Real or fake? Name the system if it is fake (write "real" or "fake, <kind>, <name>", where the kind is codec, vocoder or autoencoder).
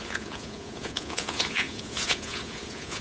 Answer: fake, vocoder, Vocos